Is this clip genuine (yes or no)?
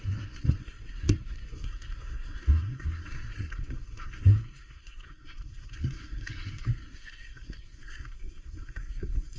no